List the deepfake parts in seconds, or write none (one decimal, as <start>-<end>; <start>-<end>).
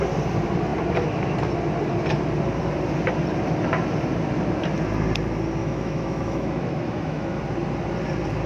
5.6-7.4